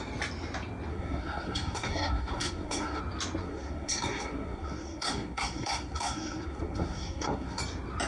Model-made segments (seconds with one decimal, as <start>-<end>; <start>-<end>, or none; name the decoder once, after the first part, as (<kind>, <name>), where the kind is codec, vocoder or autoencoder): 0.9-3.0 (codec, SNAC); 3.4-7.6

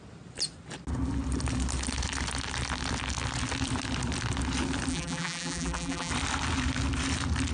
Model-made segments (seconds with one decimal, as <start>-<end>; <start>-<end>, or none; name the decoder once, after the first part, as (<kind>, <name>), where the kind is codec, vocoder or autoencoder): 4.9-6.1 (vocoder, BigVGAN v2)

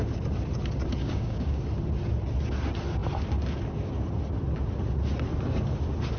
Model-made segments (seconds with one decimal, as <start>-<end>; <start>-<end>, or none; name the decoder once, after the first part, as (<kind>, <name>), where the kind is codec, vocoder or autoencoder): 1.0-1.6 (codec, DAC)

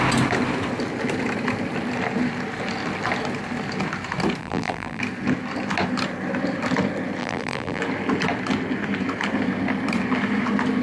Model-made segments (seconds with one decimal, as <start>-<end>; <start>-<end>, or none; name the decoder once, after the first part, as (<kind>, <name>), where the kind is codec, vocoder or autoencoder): 4.4-5.0 (vocoder, BigVGAN v2); 7.2-7.8

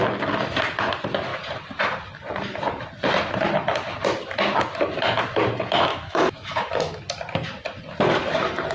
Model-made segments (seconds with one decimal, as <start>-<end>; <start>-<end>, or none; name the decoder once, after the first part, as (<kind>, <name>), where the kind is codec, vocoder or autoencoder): 5.9-7.0 (autoencoder, DAC-VAE)

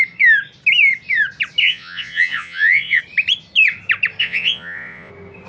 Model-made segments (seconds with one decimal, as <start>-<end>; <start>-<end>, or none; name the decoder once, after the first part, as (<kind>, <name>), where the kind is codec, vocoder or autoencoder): 1.6-3.0 (vocoder, Vocos); 4.2-5.1